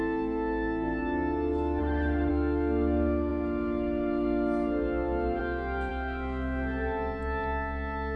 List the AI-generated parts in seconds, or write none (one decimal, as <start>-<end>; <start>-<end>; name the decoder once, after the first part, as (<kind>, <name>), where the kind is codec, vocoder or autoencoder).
1.8-2.3 (autoencoder, DAC-VAE)